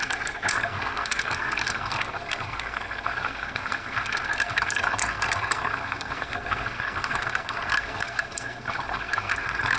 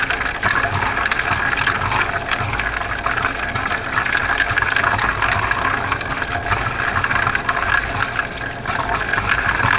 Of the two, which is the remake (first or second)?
first